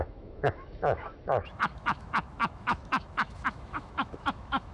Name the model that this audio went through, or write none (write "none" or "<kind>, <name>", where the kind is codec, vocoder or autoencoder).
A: autoencoder, DAC-VAE